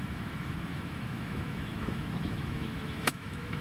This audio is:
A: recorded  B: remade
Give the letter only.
B